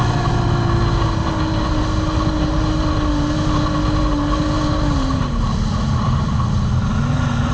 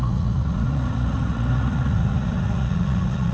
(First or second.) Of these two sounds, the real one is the first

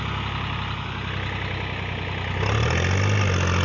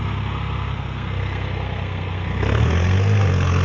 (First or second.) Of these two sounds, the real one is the first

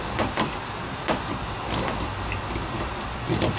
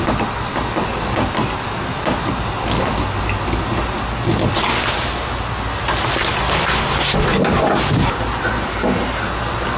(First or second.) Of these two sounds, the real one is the second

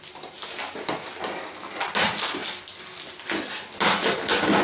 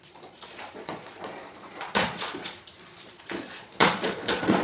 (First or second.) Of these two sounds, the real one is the first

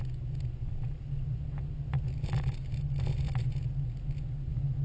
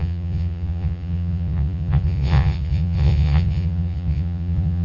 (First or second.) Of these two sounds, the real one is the first